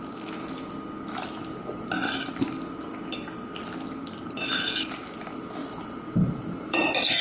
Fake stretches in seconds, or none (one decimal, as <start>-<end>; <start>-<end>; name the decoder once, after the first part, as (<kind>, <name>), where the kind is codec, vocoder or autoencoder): 5.6-7.2 (vocoder, BigVGAN v2)